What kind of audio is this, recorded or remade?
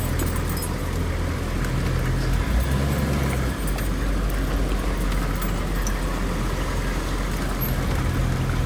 recorded